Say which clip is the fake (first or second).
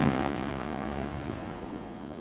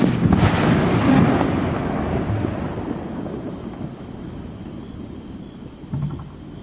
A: first